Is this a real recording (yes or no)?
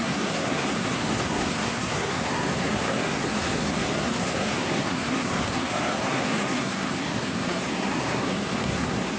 no